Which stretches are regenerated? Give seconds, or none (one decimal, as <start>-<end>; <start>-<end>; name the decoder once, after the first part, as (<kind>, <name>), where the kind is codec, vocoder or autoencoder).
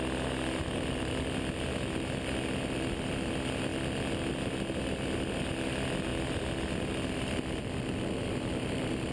none